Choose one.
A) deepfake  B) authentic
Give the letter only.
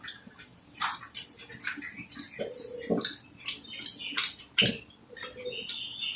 B